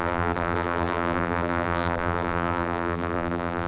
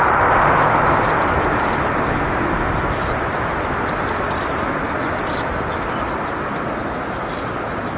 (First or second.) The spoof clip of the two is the first